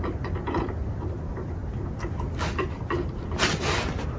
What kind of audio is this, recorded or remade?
recorded